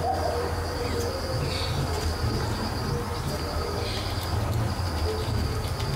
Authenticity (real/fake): real